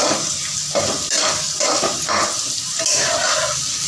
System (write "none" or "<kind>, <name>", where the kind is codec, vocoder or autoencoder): none